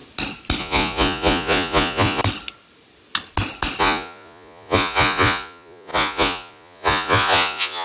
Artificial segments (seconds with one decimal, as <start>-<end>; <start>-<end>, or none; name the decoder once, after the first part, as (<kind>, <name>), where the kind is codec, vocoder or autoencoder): 0.6-2.2 (vocoder, Vocos); 3.8-7.8